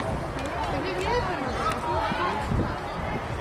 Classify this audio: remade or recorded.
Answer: recorded